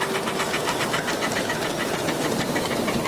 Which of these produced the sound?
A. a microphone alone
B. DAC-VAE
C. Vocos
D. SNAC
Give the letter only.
A